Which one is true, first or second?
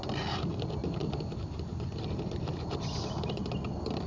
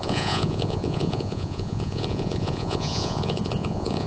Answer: first